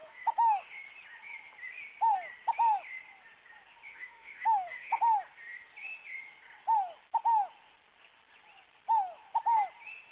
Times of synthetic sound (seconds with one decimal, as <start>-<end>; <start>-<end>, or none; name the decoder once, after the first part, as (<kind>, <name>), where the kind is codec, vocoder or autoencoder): 0.0-0.7 (autoencoder, DAC-VAE); 3.9-5.0